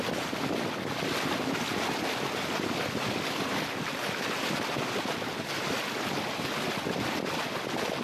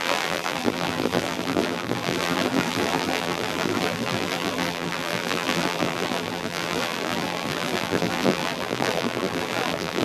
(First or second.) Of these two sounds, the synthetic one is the second